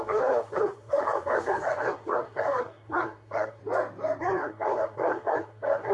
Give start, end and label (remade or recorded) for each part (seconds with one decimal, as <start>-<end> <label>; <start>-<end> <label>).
0.0-3.6 remade; 3.6-4.2 recorded; 4.2-5.9 remade